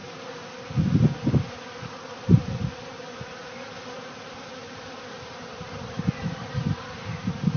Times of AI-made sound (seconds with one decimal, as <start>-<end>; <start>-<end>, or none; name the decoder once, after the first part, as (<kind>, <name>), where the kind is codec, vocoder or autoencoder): none